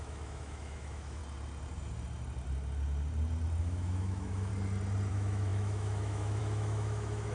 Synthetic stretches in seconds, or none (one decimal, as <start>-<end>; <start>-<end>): 0.0-1.2; 3.6-4.5; 5.1-7.3